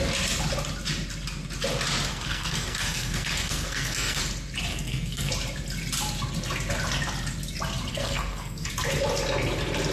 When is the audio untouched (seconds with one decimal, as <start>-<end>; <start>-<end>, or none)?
0.0-2.1; 4.2-4.7; 5.3-7.9; 8.7-9.9